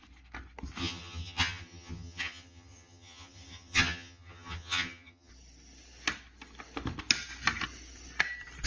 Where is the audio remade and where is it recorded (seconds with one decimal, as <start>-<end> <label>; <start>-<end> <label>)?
0.0-0.8 recorded; 0.8-5.3 remade; 5.3-8.7 recorded